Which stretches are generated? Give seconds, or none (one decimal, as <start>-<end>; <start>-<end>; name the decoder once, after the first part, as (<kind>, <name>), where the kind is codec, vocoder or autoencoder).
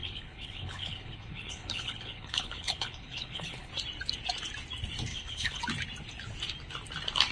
0.0-3.7 (codec, HILCodec); 5.1-5.6